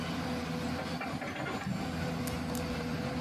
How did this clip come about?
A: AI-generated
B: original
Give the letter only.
B